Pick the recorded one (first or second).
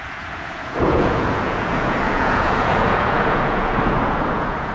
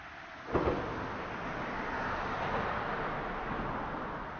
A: second